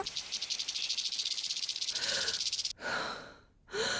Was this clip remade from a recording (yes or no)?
no